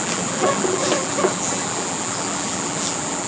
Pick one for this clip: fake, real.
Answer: fake